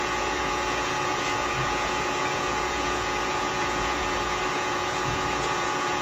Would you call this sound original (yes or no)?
no